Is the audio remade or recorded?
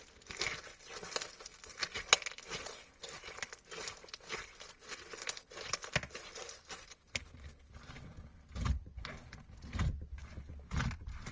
recorded